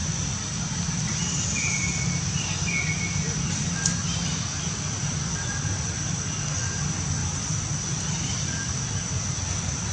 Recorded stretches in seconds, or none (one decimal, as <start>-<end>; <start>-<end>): 0.0-7.2; 8.9-9.9